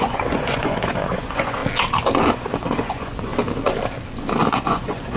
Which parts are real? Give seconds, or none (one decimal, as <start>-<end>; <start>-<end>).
1.6-2.3; 3.3-4.5